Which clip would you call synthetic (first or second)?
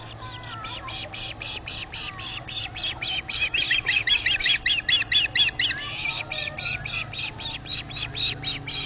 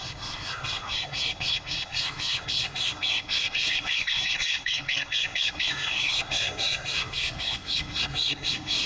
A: second